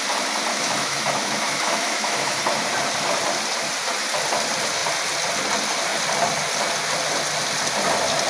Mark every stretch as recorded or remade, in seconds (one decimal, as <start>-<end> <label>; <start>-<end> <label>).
0.0-0.5 recorded; 0.5-2.4 remade; 2.4-8.3 recorded

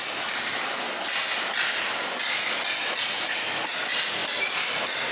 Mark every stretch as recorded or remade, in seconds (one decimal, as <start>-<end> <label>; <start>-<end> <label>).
0.0-5.1 recorded

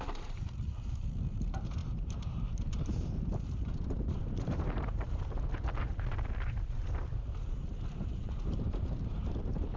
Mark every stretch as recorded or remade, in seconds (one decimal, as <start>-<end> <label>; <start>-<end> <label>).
0.0-9.8 remade

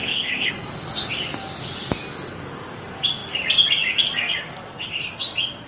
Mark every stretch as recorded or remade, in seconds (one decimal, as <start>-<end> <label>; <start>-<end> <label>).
0.0-0.5 remade; 0.5-5.7 recorded

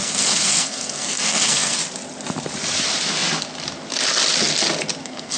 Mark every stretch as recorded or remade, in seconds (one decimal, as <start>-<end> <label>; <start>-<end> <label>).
0.0-1.8 remade; 1.8-5.0 recorded; 5.0-5.4 remade

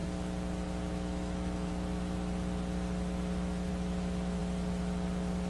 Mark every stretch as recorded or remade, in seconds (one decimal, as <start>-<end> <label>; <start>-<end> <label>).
0.0-0.9 recorded; 0.9-1.7 remade; 1.7-3.7 recorded; 3.7-4.4 remade; 4.4-5.5 recorded